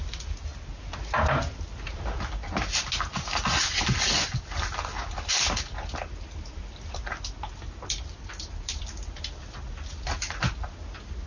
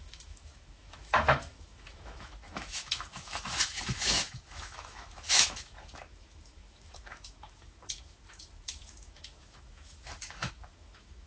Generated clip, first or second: second